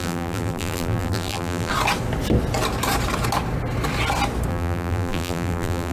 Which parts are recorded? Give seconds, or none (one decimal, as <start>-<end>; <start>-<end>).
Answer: 1.7-4.5